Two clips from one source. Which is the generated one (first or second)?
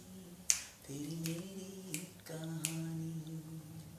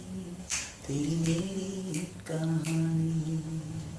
second